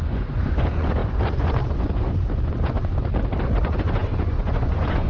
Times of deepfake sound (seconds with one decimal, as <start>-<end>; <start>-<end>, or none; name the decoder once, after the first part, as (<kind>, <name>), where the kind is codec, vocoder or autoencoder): 0.0-2.9 (vocoder, Vocos); 3.5-5.1